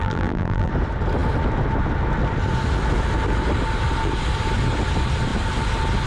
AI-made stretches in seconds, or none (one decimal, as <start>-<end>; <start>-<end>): 0.0-0.7